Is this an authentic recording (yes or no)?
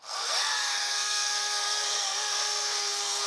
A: no